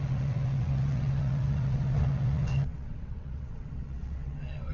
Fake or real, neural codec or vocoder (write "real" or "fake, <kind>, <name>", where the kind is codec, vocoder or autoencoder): fake, vocoder, WaveNeXt